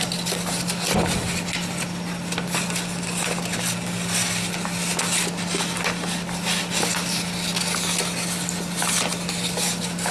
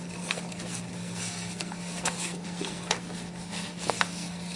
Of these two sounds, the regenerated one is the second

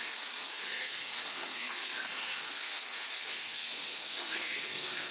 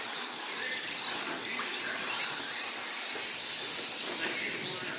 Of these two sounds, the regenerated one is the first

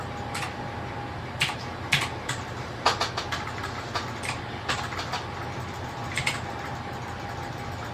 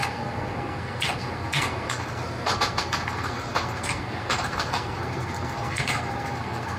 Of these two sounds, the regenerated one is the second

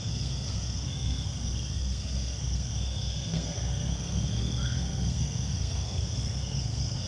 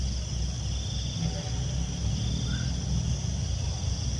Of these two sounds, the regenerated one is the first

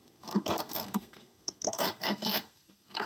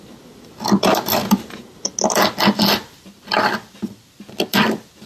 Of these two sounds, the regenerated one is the first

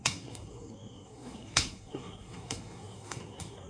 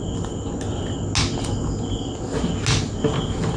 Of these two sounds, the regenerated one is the first